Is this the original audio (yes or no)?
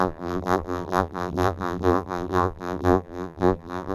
no